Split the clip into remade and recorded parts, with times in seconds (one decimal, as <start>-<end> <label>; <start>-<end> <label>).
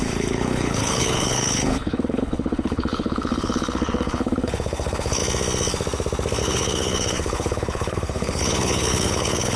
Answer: 0.0-5.2 remade; 5.2-6.4 recorded; 6.4-9.6 remade